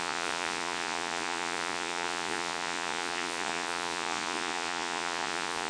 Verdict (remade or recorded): remade